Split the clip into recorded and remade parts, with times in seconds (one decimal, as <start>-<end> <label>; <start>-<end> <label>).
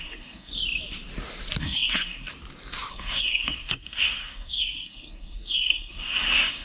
0.0-0.5 remade; 0.5-1.6 recorded; 1.6-2.3 remade; 2.3-2.9 recorded; 2.9-6.6 remade